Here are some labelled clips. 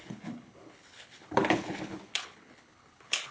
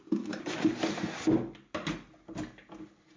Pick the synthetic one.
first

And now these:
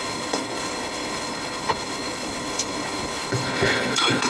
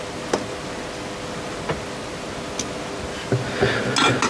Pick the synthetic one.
first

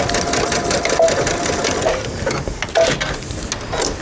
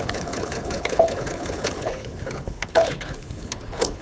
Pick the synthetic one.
second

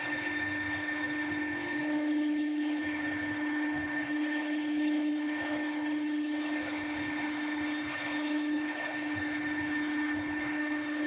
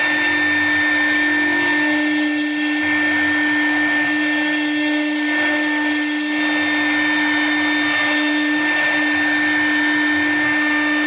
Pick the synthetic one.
first